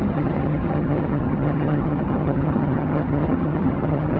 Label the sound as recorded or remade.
remade